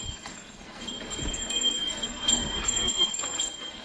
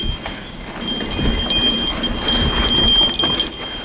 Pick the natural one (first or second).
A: second